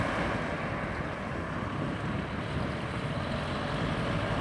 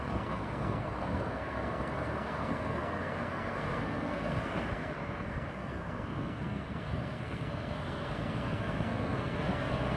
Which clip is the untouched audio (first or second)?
first